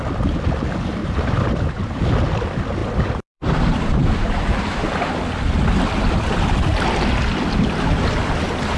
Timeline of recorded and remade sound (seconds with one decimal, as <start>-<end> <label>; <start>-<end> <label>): 0.0-1.0 recorded; 1.0-2.0 remade; 2.0-2.8 recorded; 2.8-5.1 remade; 5.1-8.8 recorded